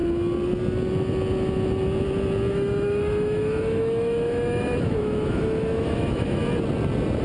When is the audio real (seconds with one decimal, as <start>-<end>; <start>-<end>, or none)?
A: 0.0-2.5; 6.4-7.2